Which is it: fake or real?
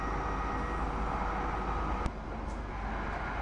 real